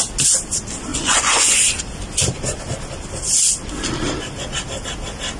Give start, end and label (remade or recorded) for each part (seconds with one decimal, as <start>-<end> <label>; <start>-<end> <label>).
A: 0.0-0.9 recorded; 0.9-1.7 remade; 1.7-5.4 recorded

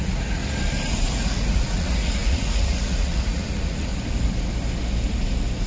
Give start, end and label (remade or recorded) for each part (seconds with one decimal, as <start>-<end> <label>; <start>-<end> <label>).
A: 0.0-0.4 remade; 0.4-1.0 recorded; 1.0-3.9 remade; 3.9-5.7 recorded

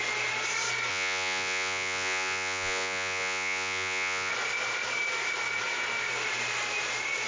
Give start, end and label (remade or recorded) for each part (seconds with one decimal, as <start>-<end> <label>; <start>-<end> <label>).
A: 0.0-0.9 recorded; 0.9-4.3 remade; 4.3-7.3 recorded

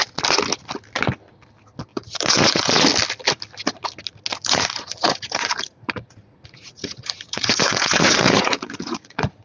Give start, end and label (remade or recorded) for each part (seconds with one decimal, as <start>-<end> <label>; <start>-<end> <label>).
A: 0.0-1.9 recorded; 1.9-2.7 remade; 2.7-4.3 recorded; 4.3-9.4 remade